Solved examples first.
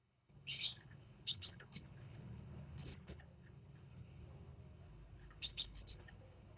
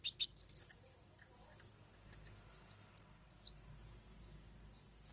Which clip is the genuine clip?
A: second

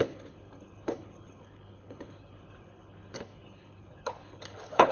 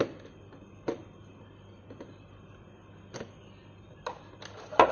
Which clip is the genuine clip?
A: second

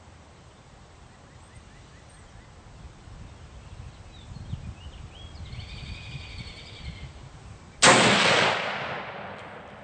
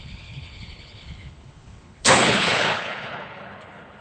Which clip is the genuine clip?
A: first